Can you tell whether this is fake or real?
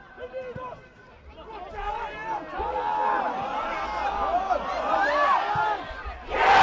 real